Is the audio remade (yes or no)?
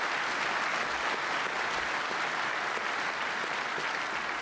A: no